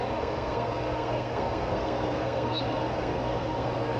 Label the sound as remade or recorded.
remade